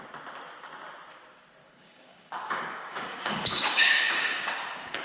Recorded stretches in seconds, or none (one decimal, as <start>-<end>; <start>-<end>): 0.0-1.6; 4.5-5.0